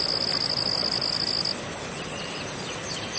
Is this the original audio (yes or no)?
yes